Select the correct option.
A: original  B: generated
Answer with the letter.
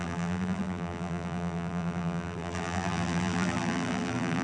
B